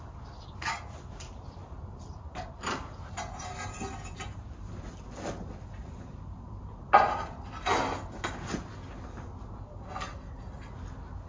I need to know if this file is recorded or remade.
recorded